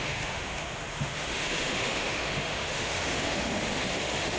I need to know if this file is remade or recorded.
remade